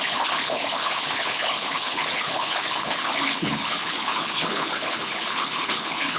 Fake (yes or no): yes